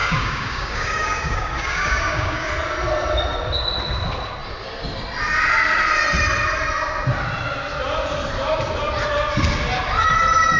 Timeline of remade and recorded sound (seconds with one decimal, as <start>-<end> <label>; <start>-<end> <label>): 0.0-2.5 remade; 2.5-10.6 recorded